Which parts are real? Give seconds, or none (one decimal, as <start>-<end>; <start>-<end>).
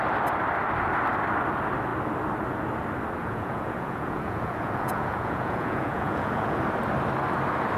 0.0-3.2; 6.6-7.8